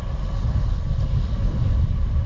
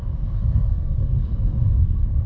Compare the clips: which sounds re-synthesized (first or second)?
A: second